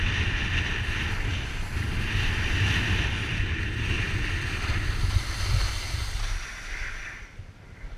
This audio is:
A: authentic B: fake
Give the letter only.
A